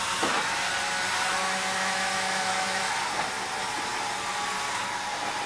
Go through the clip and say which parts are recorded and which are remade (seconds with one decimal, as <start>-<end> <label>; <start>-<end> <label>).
0.0-1.4 recorded; 1.4-2.8 remade; 2.8-5.5 recorded